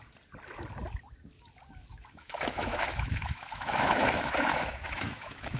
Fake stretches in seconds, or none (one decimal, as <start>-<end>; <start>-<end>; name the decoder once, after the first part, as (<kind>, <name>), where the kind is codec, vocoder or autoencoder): 1.9-5.6 (autoencoder, DAC-VAE)